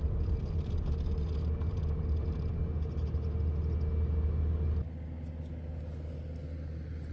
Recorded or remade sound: recorded